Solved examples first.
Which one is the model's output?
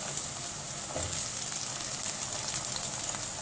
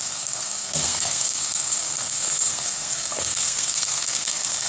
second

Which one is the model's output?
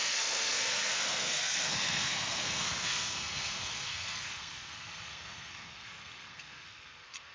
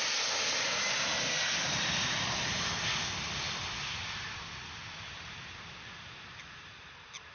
first